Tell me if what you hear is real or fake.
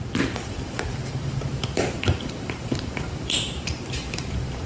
fake